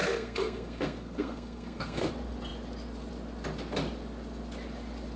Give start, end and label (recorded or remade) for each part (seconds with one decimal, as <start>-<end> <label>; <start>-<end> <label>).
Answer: 0.0-2.1 remade; 2.1-5.2 recorded